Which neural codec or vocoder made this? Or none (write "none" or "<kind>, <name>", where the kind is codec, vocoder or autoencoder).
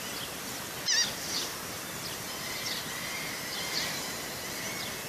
none